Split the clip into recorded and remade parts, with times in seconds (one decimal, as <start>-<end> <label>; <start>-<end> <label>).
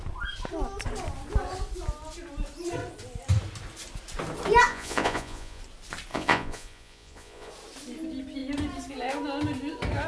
0.0-4.7 recorded; 4.7-5.6 remade; 5.6-6.1 recorded; 6.1-7.5 remade; 7.5-10.1 recorded